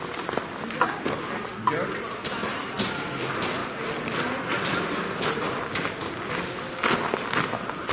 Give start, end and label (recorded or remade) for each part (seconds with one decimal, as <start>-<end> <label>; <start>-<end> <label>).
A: 0.0-7.9 recorded